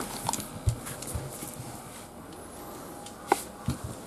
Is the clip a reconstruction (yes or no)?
no